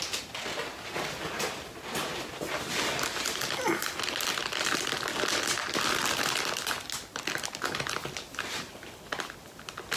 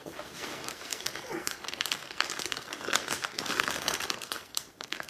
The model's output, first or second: second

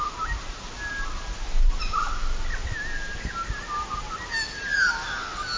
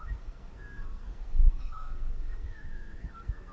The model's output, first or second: second